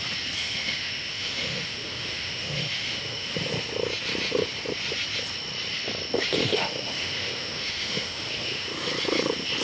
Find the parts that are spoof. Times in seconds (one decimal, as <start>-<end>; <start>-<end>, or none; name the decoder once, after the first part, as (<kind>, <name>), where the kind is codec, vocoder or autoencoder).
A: 0.4-3.3 (autoencoder, DAC-VAE); 6.4-8.9